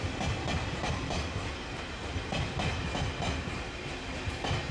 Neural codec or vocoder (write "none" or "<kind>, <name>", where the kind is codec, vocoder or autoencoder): none